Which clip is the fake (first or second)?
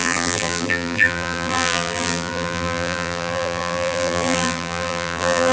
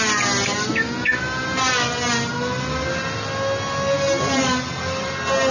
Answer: first